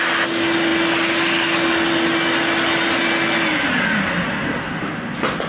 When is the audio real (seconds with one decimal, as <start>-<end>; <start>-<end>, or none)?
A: 0.0-5.5